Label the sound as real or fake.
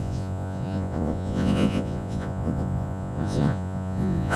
fake